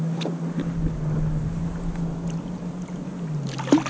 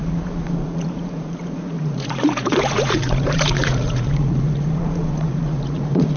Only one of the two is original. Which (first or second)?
first